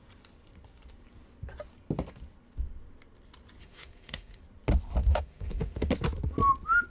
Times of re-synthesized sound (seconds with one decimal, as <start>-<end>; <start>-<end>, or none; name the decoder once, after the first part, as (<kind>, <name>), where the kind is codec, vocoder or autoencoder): 3.6-4.4 (autoencoder, DAC-VAE); 5.0-5.9